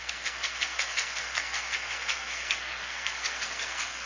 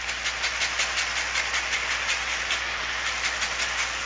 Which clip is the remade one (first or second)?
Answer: first